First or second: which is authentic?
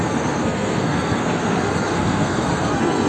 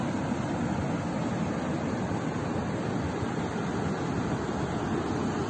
second